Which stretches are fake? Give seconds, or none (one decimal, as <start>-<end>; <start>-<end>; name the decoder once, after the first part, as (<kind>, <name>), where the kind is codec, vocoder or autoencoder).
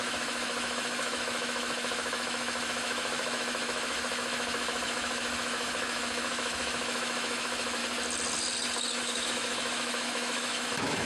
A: 0.0-7.8 (autoencoder, DAC-VAE); 9.0-11.1